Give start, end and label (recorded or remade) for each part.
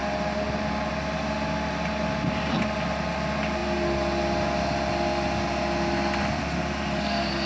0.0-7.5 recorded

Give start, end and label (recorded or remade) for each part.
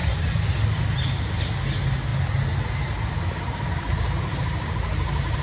0.0-5.4 recorded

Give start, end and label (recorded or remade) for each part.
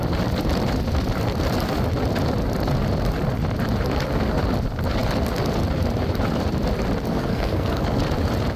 0.0-7.1 recorded; 7.1-8.0 remade; 8.0-8.6 recorded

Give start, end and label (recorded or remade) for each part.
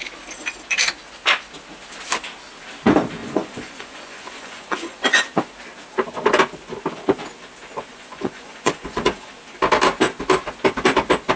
0.0-3.2 recorded; 3.2-5.2 remade; 5.2-7.9 recorded; 7.9-9.3 remade; 9.3-11.4 recorded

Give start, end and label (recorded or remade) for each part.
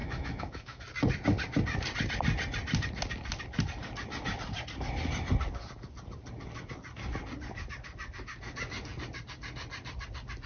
0.0-0.8 remade; 0.8-10.5 recorded